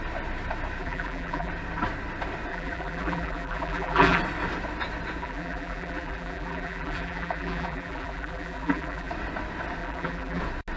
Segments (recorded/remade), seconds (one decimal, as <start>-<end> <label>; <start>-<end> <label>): 0.0-0.8 recorded; 0.8-1.5 remade; 1.5-2.5 recorded; 2.5-4.2 remade; 4.2-5.2 recorded; 5.2-9.1 remade; 9.1-9.8 recorded; 9.8-10.4 remade; 10.4-10.8 recorded